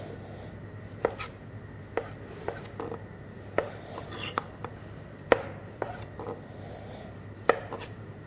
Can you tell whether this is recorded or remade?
recorded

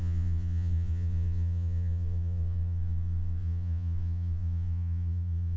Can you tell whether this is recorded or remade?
remade